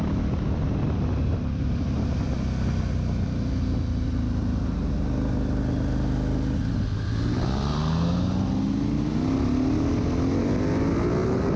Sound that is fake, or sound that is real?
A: real